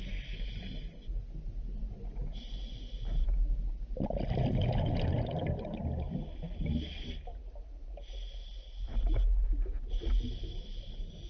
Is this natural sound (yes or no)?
yes